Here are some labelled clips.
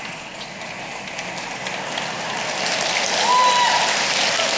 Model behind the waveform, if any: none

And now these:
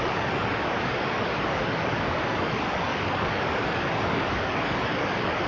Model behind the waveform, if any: codec, DAC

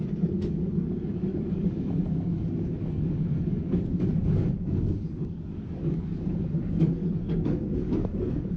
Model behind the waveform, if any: codec, DAC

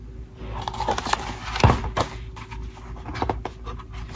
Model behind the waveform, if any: none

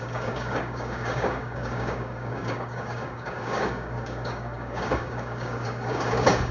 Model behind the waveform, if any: codec, DAC